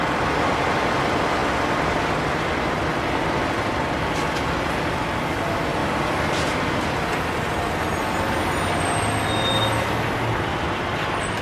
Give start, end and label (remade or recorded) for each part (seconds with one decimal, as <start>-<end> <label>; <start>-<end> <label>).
0.0-11.4 recorded